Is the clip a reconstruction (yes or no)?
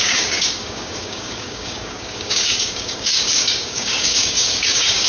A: yes